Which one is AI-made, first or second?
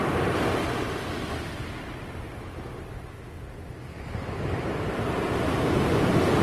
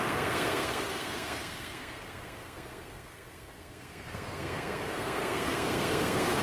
second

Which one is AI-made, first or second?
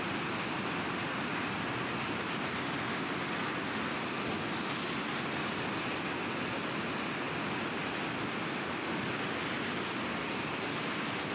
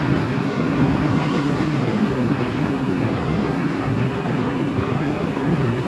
second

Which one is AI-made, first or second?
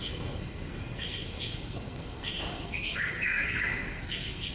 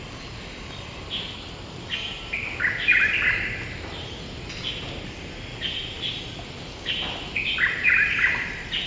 first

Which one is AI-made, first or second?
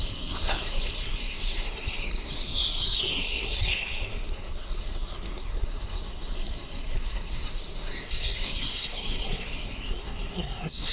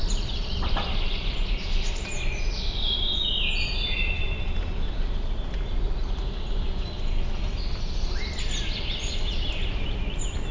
first